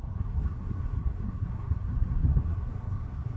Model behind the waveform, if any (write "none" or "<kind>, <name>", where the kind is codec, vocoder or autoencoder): codec, SNAC